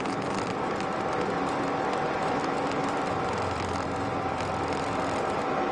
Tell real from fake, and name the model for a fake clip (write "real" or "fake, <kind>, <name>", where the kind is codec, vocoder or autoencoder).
fake, vocoder, BigVGAN v2